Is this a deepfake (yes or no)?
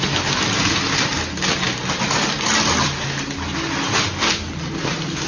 no